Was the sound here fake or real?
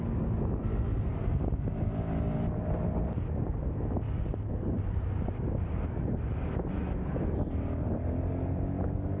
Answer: real